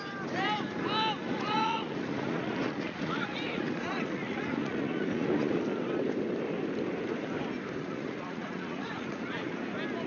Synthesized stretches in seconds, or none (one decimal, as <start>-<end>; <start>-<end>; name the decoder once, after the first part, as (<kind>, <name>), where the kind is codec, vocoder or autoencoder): 1.2-5.6 (vocoder, Vocos); 7.8-9.5